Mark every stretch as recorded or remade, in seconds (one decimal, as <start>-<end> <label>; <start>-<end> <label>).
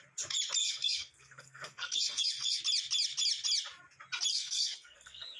0.0-0.6 recorded; 0.6-2.6 remade; 2.6-4.3 recorded; 4.3-5.4 remade